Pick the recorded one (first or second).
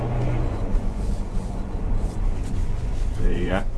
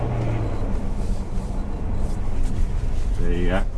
second